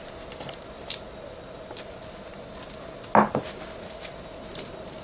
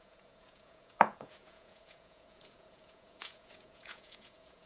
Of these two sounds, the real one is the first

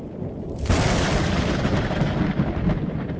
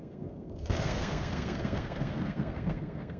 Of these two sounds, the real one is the first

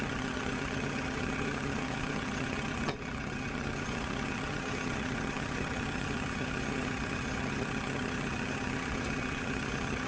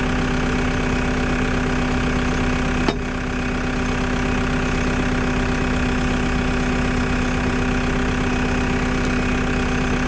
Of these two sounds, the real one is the second